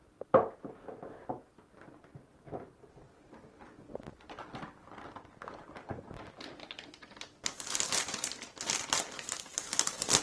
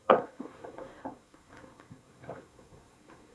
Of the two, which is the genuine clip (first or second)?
first